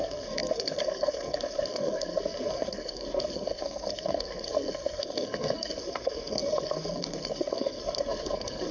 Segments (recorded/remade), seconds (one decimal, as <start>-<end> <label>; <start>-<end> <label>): 0.0-8.7 remade